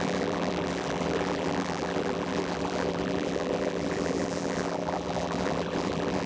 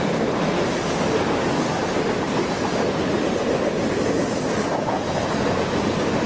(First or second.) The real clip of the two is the second